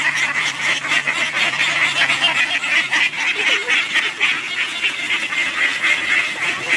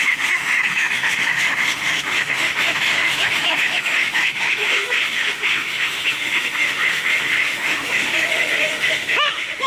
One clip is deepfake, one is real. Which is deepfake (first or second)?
second